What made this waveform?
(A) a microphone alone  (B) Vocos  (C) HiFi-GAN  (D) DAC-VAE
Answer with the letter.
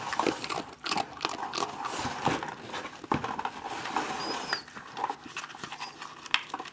A